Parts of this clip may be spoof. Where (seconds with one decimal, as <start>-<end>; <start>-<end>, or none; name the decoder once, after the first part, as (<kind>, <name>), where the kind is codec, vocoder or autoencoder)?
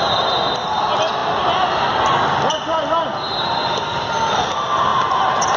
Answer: none